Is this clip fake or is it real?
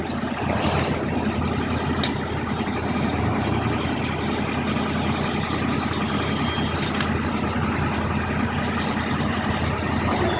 real